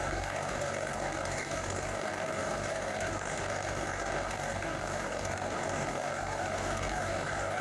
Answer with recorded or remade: remade